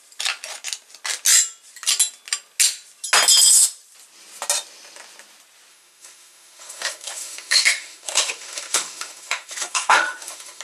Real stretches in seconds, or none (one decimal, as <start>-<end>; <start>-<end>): 0.0-5.7